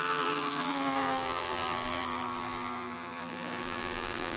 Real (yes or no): no